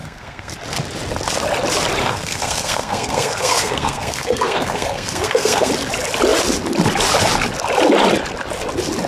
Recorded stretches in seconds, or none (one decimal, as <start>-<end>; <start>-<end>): 0.5-2.0; 5.7-9.1